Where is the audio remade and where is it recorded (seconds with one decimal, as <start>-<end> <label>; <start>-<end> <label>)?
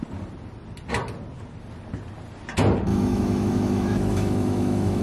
0.0-2.9 recorded; 2.9-5.0 remade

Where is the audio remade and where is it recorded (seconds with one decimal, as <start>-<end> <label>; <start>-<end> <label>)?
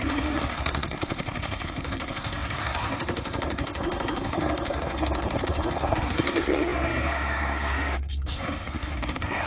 0.0-9.5 remade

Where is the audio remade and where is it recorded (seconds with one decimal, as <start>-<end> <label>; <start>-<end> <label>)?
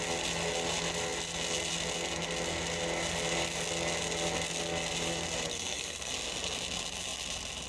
0.0-5.5 recorded; 5.5-6.1 remade; 6.1-7.7 recorded